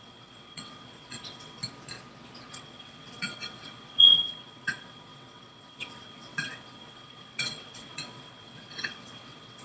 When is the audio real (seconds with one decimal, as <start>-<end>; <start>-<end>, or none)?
1.6-2.5